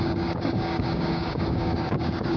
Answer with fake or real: fake